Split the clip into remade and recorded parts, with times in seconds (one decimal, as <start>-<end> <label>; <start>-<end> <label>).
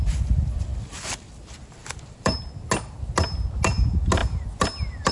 0.0-1.8 recorded; 1.8-2.4 remade; 2.4-4.2 recorded; 4.2-5.1 remade